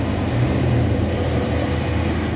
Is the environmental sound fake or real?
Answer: real